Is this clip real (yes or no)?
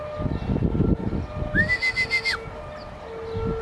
yes